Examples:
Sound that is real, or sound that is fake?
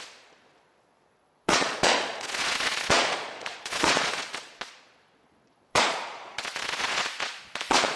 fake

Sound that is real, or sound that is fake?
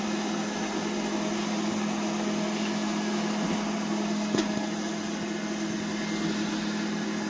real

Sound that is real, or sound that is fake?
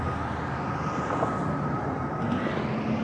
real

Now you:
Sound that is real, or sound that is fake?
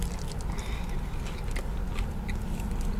real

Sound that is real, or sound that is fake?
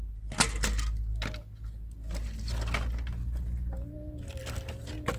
real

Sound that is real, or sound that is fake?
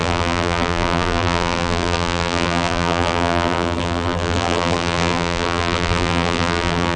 fake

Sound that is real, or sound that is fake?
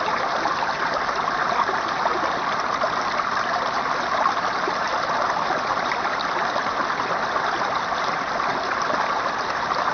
real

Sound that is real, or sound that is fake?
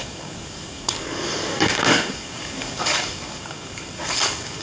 fake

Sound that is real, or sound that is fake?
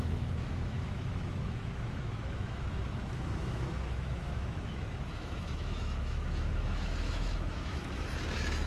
fake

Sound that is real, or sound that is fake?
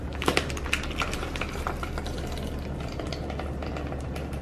fake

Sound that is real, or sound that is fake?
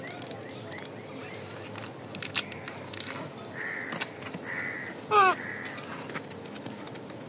real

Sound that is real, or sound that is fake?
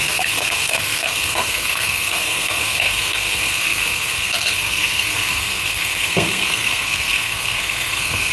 fake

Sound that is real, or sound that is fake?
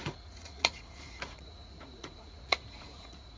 fake